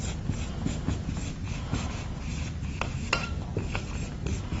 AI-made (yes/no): no